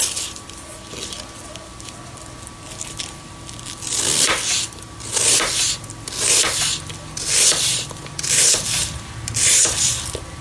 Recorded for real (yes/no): yes